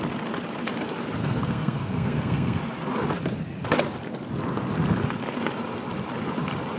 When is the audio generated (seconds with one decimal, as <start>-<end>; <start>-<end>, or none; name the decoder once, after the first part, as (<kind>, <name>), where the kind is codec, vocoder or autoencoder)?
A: 1.2-2.6 (codec, SNAC)

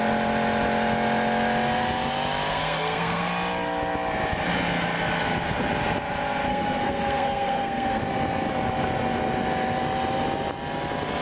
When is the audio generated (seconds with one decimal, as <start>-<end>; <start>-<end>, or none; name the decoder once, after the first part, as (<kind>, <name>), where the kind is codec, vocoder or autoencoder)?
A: 2.5-3.3 (codec, SNAC); 6.5-8.0

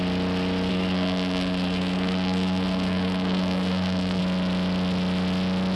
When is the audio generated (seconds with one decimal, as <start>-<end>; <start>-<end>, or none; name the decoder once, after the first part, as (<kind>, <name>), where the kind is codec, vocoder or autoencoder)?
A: 0.7-4.2 (codec, SNAC)

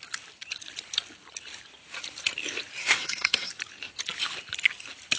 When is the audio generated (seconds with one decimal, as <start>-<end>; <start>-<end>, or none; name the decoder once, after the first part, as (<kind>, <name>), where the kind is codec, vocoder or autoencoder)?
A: 2.8-3.5 (codec, SNAC)

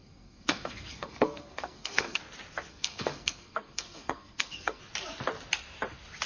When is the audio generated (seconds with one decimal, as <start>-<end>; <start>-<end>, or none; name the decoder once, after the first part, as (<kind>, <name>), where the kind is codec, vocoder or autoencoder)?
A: 0.0-2.2 (codec, SNAC); 2.7-4.8

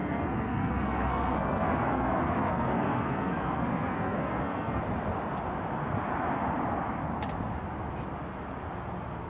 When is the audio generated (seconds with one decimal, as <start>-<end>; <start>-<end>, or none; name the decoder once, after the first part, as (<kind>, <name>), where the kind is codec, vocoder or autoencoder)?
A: 0.0-4.8 (codec, SNAC)